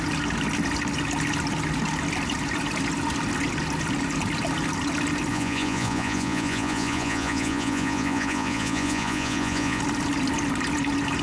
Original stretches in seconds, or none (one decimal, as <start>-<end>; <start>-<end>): 0.0-5.3; 9.8-11.2